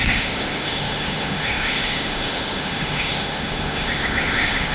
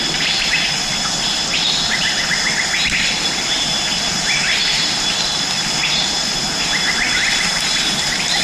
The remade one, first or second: first